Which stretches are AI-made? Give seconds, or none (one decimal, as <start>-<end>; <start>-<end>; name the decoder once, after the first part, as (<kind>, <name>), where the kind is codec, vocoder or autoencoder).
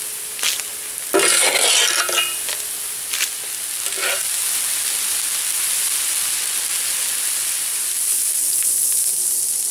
none